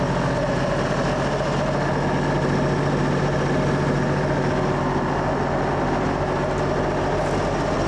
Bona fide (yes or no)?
yes